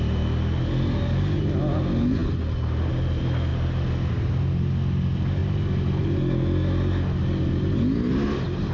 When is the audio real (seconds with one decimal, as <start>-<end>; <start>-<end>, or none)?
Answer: 0.0-8.7